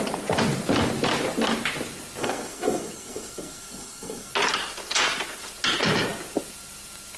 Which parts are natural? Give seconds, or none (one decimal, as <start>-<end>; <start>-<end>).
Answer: 0.0-2.2; 4.3-7.2